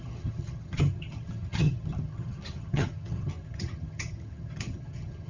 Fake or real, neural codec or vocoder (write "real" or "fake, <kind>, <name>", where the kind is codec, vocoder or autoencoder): fake, vocoder, HiFi-GAN